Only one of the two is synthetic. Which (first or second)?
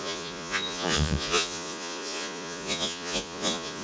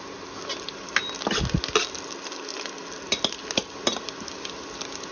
first